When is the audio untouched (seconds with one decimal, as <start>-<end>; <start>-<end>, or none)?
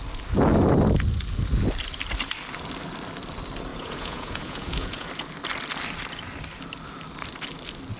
0.0-3.7; 5.1-8.0